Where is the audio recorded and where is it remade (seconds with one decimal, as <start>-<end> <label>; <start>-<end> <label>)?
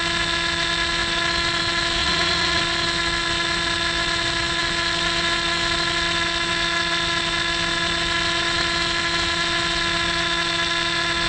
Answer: 0.0-2.0 recorded; 2.0-2.6 remade; 2.6-11.3 recorded